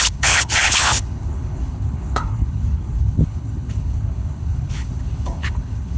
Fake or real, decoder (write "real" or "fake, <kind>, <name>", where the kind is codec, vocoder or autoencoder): fake, codec, HILCodec